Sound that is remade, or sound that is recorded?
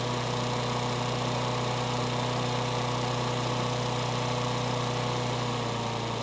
remade